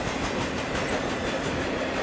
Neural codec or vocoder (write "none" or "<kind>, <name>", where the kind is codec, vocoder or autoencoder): none